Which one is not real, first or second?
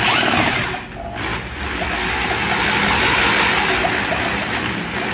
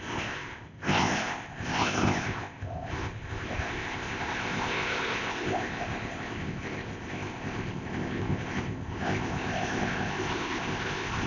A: second